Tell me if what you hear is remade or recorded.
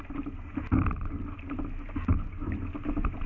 recorded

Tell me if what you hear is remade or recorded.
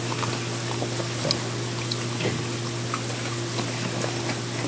recorded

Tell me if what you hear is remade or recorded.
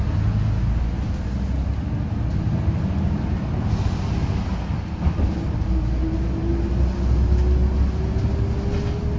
recorded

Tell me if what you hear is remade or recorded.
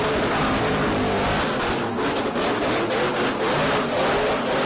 recorded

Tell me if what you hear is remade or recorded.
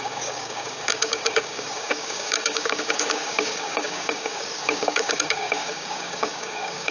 remade